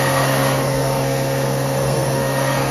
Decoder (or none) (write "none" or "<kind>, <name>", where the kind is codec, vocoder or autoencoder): codec, SNAC